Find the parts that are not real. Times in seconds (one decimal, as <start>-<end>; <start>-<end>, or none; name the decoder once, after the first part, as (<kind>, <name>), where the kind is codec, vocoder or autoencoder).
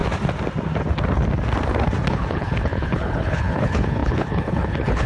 2.1-5.1 (codec, HILCodec)